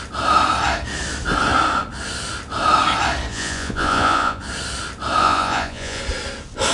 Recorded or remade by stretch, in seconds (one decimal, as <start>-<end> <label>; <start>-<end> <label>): 0.0-3.3 recorded; 3.3-4.4 remade; 4.4-5.2 recorded; 5.2-6.0 remade; 6.0-6.7 recorded